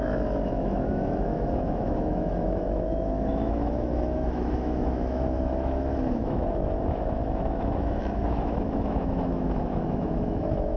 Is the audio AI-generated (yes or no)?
yes